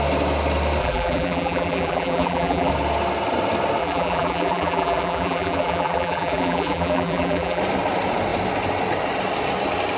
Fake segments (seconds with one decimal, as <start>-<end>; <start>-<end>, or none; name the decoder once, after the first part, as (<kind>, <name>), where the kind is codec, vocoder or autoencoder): 0.8-2.7 (vocoder, BigVGAN v2); 3.8-7.6